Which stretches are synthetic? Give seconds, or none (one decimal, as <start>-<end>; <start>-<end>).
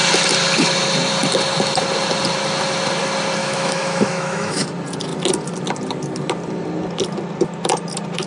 3.4-4.6